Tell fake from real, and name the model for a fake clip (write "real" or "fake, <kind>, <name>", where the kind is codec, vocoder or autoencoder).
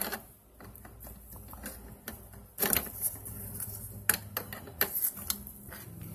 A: real